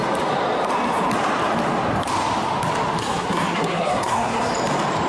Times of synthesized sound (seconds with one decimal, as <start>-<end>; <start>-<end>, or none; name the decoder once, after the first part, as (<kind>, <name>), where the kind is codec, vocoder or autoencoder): 3.0-4.5 (codec, SNAC)